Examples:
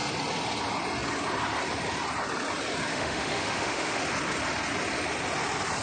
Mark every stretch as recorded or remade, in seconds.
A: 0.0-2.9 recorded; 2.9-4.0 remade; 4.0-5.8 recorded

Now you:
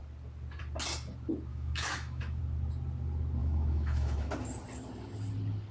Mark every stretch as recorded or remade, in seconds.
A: 0.0-1.5 recorded; 1.5-2.4 remade; 2.4-3.4 recorded; 3.4-4.3 remade; 4.3-5.7 recorded

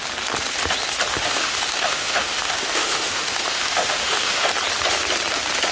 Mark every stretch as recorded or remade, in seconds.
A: 0.0-1.1 recorded; 1.1-4.5 remade; 4.5-5.7 recorded